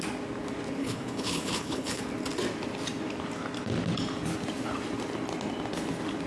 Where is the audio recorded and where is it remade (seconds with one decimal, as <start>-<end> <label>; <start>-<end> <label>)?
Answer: 0.0-0.8 recorded; 0.8-2.0 remade; 2.0-6.3 recorded

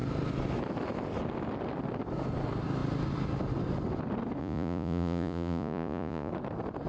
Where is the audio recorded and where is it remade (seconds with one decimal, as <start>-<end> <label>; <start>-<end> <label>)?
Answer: 0.0-4.4 recorded; 4.4-6.3 remade; 6.3-6.9 recorded

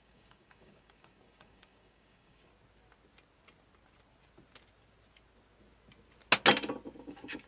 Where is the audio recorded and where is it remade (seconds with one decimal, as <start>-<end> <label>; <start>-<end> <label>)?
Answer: 0.0-2.5 remade; 2.5-7.0 recorded; 7.0-7.5 remade

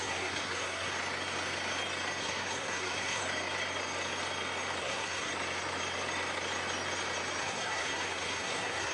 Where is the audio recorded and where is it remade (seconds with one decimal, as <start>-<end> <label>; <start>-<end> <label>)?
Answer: 0.0-0.9 remade; 0.9-2.2 recorded; 2.2-3.2 remade; 3.2-4.8 recorded; 4.8-5.3 remade; 5.3-7.4 recorded; 7.4-8.9 remade

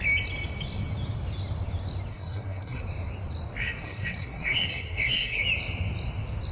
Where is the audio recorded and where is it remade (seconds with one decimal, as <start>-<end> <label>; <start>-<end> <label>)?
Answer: 0.0-2.1 recorded; 2.1-2.8 remade; 2.8-3.6 recorded; 3.6-5.4 remade; 5.4-6.5 recorded